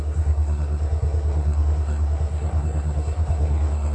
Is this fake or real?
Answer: fake